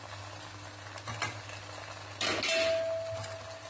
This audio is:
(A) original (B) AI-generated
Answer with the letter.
A